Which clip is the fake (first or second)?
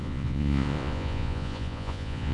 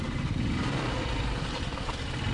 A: first